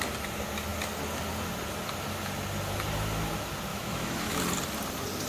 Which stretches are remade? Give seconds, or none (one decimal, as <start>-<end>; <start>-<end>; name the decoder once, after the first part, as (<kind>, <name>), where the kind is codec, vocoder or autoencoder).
3.7-4.4 (autoencoder, DAC-VAE)